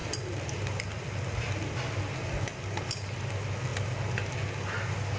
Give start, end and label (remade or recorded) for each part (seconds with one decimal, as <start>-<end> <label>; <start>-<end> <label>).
0.0-5.2 recorded